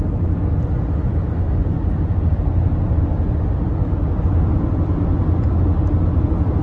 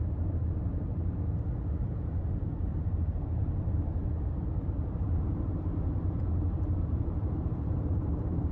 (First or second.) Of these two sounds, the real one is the first